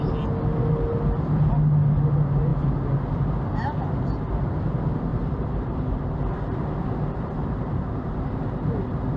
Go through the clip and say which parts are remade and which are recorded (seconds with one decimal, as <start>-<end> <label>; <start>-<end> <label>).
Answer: 0.0-5.1 recorded; 5.1-9.2 remade